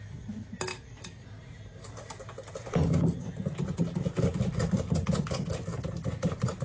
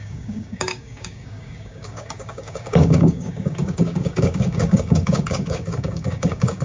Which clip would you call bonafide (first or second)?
first